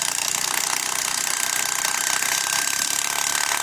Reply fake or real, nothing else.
real